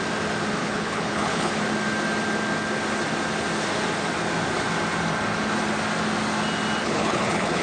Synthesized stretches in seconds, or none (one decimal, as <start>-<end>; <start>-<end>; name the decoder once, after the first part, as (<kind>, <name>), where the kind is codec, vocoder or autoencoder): 0.6-1.5 (codec, HILCodec); 6.8-7.6